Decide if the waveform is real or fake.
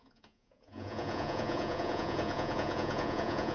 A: fake